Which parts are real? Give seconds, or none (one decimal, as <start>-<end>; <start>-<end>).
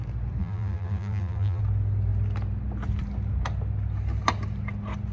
0.0-0.4; 1.6-5.1